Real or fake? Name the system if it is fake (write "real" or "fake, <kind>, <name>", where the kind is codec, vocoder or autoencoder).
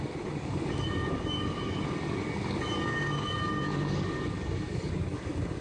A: fake, codec, DAC